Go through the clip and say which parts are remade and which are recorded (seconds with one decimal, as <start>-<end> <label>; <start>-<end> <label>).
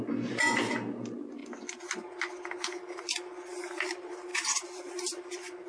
0.0-4.3 recorded; 4.3-4.9 remade; 4.9-5.7 recorded